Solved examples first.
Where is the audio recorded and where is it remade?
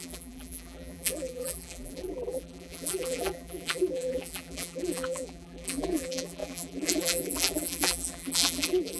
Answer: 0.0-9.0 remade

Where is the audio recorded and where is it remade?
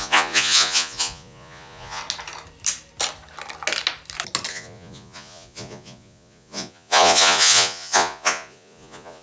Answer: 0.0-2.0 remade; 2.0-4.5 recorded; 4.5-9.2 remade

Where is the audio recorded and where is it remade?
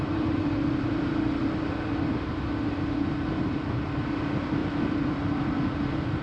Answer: 0.0-1.4 remade; 1.4-2.7 recorded; 2.7-4.6 remade; 4.6-5.1 recorded; 5.1-6.2 remade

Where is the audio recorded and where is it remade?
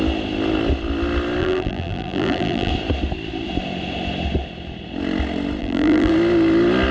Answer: 0.0-1.4 recorded; 1.4-2.7 remade; 2.7-5.6 recorded; 5.6-6.1 remade; 6.1-6.9 recorded